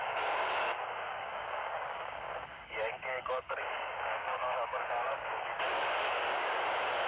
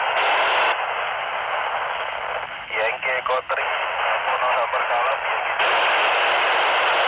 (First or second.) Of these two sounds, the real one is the second